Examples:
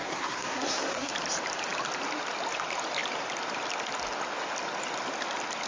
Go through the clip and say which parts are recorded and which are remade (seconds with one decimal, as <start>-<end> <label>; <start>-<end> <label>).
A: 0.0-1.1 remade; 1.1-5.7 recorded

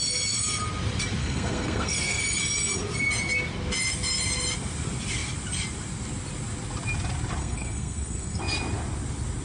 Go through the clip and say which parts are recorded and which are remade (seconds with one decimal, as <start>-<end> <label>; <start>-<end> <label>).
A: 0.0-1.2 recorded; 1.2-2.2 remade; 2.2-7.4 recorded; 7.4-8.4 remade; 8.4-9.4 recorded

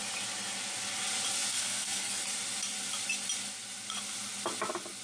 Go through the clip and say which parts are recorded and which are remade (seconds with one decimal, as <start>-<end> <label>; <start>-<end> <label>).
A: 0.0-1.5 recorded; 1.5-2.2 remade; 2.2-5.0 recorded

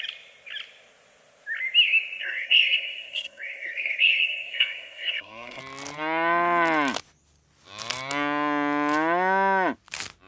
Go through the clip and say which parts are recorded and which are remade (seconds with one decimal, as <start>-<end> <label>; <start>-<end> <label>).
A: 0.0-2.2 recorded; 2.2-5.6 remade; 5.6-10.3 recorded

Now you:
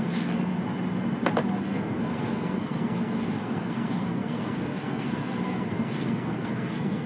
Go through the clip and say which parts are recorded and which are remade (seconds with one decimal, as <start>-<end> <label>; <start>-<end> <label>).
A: 0.0-0.6 remade; 0.6-1.6 recorded; 1.6-7.1 remade

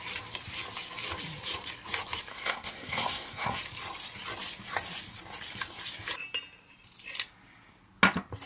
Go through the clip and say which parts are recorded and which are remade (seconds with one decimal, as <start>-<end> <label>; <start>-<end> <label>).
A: 0.0-2.3 recorded; 2.3-3.6 remade; 3.6-8.5 recorded

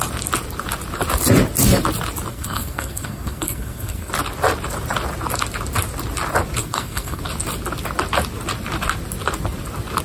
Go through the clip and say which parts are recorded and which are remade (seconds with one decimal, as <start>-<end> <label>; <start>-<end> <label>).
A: 0.0-2.3 recorded; 2.3-4.1 remade; 4.1-6.6 recorded; 6.6-7.2 remade; 7.2-10.0 recorded

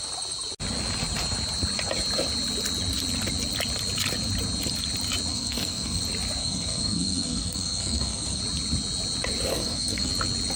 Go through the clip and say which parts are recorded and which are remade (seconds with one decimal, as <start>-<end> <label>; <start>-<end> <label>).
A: 0.0-5.3 recorded; 5.3-6.0 remade; 6.0-6.4 recorded; 6.4-8.4 remade; 8.4-9.5 recorded; 9.5-10.1 remade; 10.1-10.6 recorded